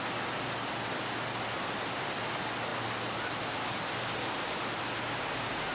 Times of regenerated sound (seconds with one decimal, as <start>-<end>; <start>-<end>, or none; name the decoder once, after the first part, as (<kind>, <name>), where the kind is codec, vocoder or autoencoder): none